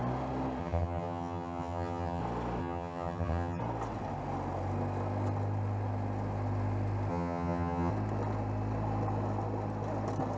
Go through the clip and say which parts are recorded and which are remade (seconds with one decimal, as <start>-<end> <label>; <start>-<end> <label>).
0.0-0.6 recorded; 0.6-2.2 remade; 2.2-2.6 recorded; 2.6-3.6 remade; 3.6-7.1 recorded; 7.1-7.9 remade; 7.9-10.4 recorded